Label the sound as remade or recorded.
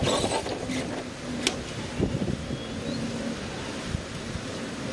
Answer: recorded